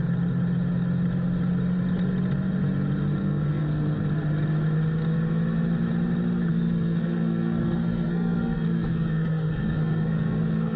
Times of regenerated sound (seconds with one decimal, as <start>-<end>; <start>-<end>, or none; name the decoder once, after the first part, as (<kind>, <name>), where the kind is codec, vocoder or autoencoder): 3.2-4.0 (codec, SNAC); 6.5-10.8

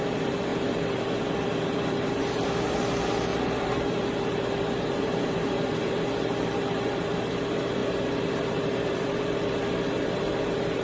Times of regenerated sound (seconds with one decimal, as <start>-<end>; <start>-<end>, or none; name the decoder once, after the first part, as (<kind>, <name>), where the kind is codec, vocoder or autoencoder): 0.0-10.8 (vocoder, BigVGAN v2)

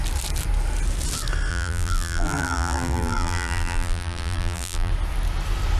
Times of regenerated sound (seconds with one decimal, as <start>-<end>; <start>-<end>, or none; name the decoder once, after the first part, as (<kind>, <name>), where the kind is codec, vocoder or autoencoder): 1.5-4.9 (vocoder, BigVGAN v2)

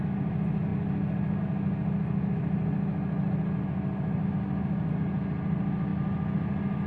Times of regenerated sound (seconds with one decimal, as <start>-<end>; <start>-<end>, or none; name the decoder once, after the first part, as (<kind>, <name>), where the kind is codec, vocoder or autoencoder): none

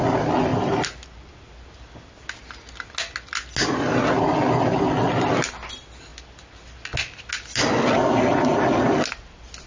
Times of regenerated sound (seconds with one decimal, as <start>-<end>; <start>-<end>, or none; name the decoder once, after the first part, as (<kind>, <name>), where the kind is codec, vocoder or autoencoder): none

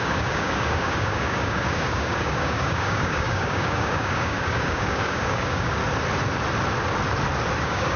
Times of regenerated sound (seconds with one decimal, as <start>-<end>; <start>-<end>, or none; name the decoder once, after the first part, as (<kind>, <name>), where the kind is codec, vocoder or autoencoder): 0.0-5.8 (codec, DAC); 7.6-8.0

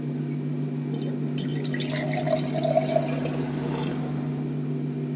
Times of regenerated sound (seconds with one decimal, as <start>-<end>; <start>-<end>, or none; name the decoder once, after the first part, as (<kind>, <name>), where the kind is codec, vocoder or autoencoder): none